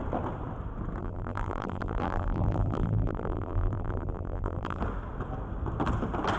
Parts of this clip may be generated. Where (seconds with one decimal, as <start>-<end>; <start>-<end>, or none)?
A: 1.0-4.8